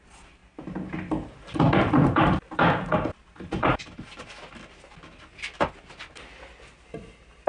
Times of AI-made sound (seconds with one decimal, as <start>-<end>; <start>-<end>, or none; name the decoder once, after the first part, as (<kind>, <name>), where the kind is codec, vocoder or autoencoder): 0.0-0.4 (vocoder, BigVGAN v2); 1.8-2.9